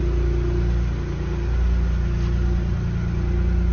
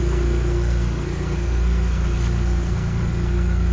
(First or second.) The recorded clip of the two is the first